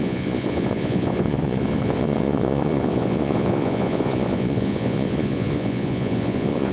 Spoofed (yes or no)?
yes